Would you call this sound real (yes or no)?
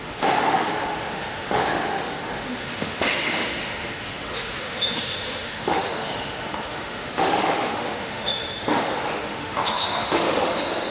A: no